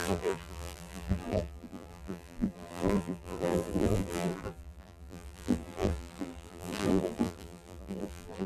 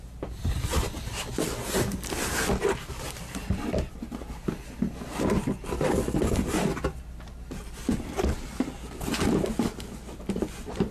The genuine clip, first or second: second